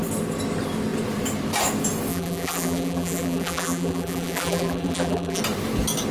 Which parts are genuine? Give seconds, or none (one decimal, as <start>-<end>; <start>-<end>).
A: 0.0-2.1; 5.4-6.1